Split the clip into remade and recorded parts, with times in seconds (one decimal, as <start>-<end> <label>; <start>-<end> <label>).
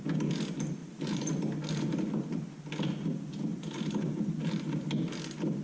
0.0-0.8 recorded; 0.8-1.3 remade; 1.3-3.5 recorded; 3.5-5.0 remade; 5.0-5.6 recorded